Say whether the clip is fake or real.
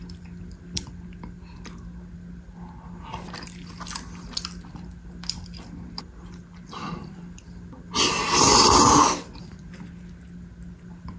real